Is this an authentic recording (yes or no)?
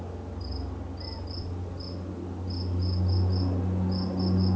yes